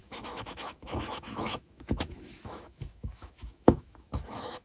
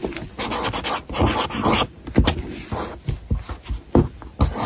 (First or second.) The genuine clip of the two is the second